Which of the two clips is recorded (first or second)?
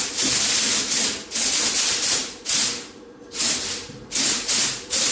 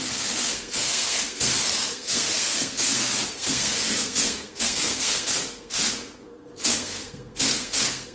first